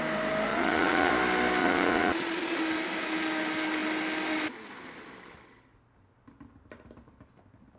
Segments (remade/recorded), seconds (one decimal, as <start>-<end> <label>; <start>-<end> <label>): 0.0-0.5 recorded; 0.5-1.1 remade; 1.1-1.6 recorded; 1.6-2.6 remade; 2.6-7.8 recorded